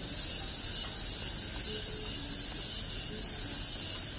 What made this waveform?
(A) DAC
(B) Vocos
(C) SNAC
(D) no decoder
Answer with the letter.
D